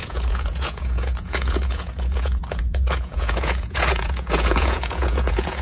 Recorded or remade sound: remade